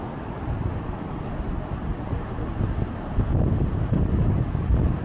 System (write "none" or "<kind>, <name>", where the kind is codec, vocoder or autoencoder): none